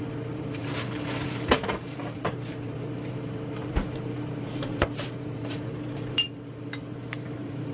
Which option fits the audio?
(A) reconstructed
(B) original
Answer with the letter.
A